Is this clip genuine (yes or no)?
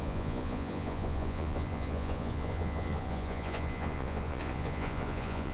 no